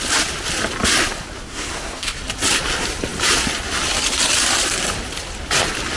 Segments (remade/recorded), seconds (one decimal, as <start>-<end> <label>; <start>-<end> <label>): 0.0-1.4 recorded; 1.4-2.2 remade; 2.2-6.0 recorded